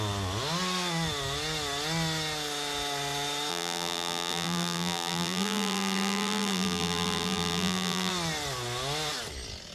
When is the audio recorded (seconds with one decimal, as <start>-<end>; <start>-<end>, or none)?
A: 0.0-3.5; 8.1-9.7